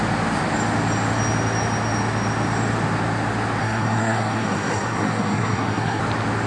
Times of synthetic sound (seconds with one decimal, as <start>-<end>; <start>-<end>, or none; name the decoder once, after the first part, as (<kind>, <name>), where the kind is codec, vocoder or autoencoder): 3.6-6.0 (codec, SNAC)